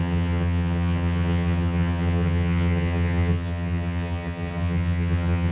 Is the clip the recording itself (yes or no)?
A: no